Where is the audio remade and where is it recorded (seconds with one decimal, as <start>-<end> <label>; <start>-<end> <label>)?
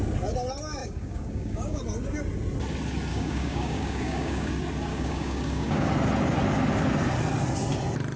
0.0-0.8 recorded; 0.8-1.8 remade; 1.8-3.1 recorded; 3.1-4.5 remade; 4.5-4.9 recorded; 4.9-5.9 remade; 5.9-8.2 recorded